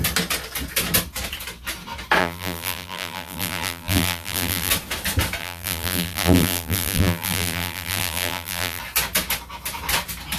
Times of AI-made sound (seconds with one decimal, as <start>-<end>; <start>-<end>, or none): 2.2-4.7; 5.4-8.8